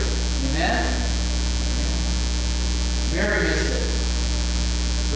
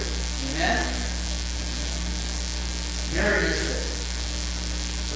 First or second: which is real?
first